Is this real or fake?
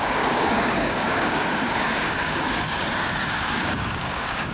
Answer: fake